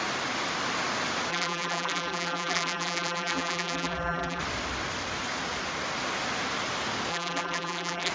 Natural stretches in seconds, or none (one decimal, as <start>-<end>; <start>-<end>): 0.0-1.3; 4.4-7.1